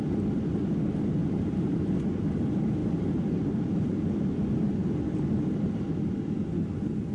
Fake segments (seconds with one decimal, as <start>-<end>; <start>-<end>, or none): 1.2-2.3; 2.8-4.0